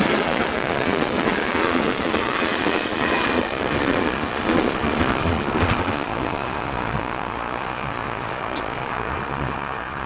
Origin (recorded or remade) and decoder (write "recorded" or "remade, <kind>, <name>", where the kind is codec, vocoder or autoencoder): remade, vocoder, Vocos